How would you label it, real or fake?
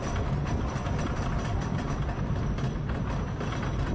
real